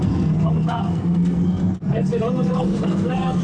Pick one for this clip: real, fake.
fake